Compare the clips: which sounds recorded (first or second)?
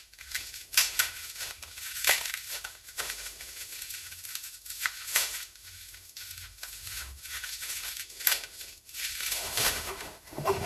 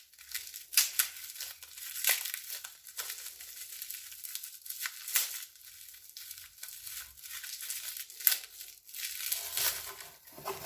second